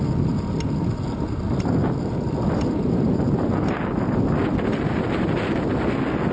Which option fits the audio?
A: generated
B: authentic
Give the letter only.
B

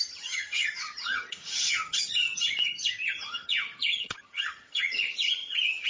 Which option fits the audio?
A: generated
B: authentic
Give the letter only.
A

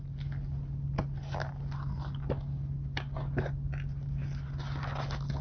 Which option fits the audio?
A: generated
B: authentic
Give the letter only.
B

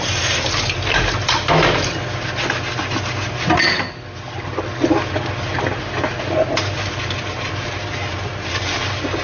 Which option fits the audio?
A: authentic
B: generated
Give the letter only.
A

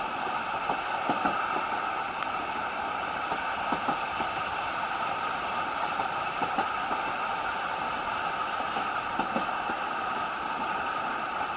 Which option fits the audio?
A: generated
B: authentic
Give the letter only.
B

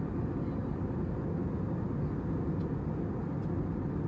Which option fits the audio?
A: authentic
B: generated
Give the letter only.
A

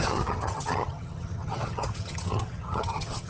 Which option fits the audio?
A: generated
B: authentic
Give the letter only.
A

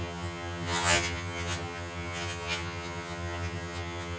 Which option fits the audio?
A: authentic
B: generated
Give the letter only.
B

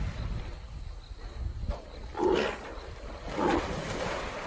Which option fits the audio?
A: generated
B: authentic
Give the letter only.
B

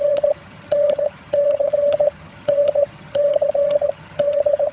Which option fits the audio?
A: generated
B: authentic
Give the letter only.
A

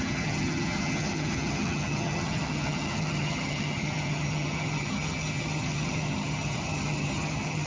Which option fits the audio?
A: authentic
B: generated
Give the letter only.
B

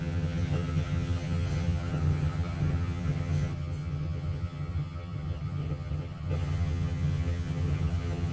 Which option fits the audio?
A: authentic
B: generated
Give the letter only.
B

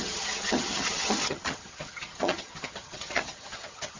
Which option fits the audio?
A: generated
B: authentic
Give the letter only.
A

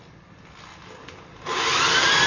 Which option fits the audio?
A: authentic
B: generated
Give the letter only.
A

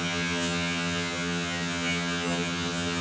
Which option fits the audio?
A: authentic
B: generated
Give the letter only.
B